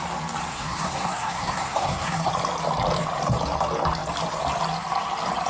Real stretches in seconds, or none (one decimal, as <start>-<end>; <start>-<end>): 0.0-0.5; 2.3-5.5